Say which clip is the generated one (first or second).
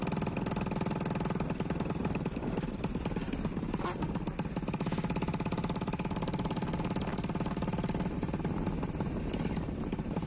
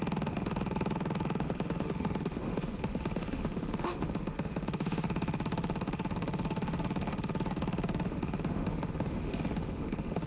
second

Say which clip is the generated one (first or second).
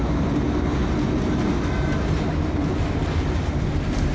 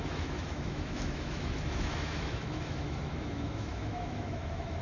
second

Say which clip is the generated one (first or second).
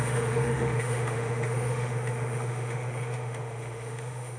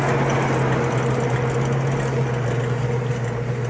first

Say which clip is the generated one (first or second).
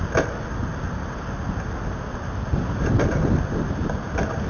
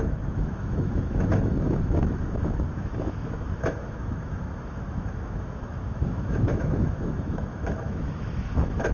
second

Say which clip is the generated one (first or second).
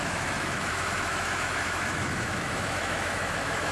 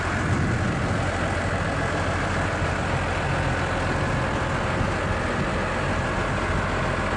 first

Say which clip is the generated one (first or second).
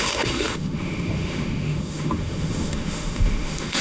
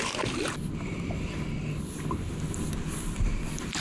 first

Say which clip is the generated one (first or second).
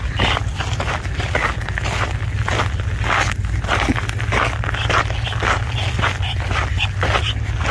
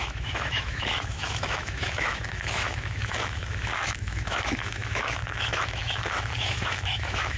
second